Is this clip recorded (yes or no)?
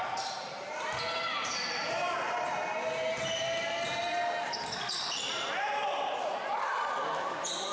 no